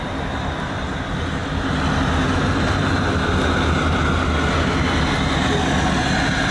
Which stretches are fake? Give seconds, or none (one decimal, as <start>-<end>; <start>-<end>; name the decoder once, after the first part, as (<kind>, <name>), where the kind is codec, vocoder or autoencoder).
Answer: none